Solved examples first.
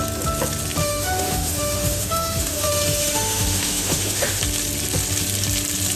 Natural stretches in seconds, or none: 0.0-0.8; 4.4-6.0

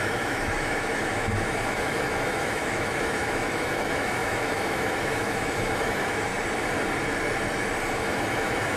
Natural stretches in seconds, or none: 6.3-7.9

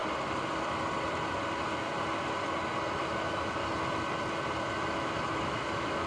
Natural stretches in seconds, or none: 0.0-3.0; 3.6-4.6

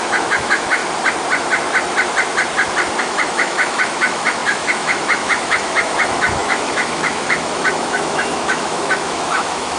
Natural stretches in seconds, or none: 0.8-3.0

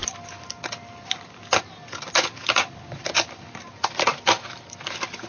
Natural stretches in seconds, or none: 0.0-5.3